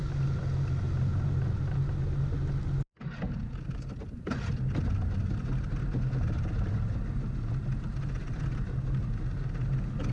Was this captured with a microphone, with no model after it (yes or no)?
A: yes